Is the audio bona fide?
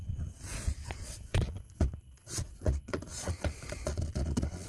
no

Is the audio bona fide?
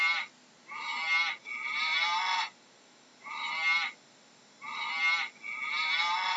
yes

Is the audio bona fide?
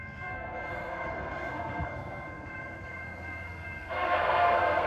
no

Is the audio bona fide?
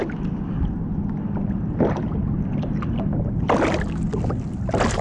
yes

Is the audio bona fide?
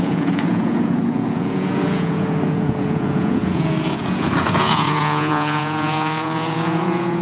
no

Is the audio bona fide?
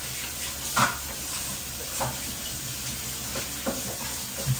yes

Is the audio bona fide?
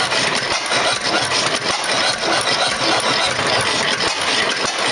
yes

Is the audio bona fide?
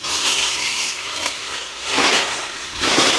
no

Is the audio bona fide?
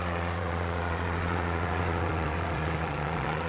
no